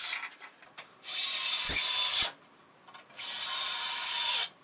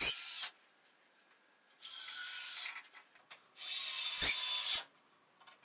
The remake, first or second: first